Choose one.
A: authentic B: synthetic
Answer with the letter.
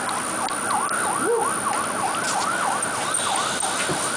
A